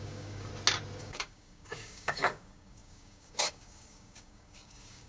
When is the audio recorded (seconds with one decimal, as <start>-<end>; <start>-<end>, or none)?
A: 0.5-1.0